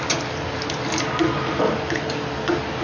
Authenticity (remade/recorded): recorded